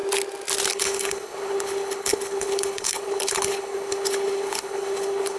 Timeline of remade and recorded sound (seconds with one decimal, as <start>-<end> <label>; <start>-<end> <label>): 0.0-0.7 recorded; 0.7-5.4 remade

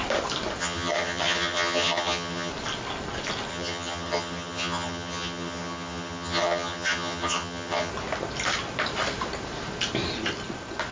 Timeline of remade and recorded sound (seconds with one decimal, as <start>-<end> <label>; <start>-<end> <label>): 0.0-0.6 recorded; 0.6-2.5 remade; 2.5-3.5 recorded; 3.5-7.9 remade; 7.9-10.9 recorded

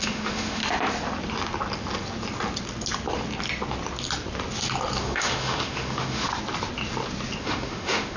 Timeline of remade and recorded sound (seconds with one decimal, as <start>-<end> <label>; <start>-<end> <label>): 0.0-0.6 remade; 0.6-5.0 recorded; 5.0-6.3 remade; 6.3-7.4 recorded; 7.4-8.2 remade

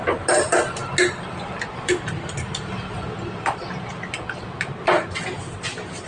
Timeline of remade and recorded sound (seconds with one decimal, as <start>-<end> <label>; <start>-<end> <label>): 0.0-6.1 recorded

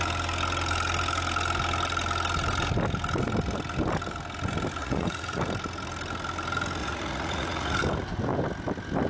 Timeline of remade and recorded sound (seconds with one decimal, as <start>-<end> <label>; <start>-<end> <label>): 0.0-4.8 recorded; 4.8-5.4 remade; 5.4-6.8 recorded; 6.8-7.8 remade; 7.8-9.1 recorded

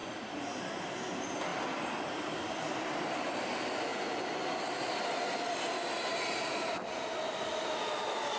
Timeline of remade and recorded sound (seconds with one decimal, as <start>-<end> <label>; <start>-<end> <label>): 0.0-8.4 recorded

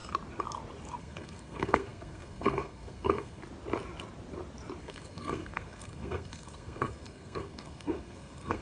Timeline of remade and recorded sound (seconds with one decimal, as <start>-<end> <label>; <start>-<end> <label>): 0.0-1.0 recorded; 1.0-3.4 remade; 3.4-4.8 recorded; 4.8-8.6 remade